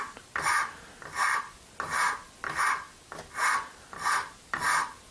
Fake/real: real